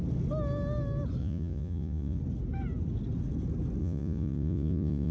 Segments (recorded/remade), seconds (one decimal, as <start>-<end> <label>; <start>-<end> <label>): 0.0-1.2 recorded; 1.2-2.2 remade; 2.2-3.8 recorded; 3.8-5.1 remade